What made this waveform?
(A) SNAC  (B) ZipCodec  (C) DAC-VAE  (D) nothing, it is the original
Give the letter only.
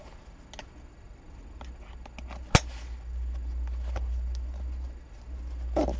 D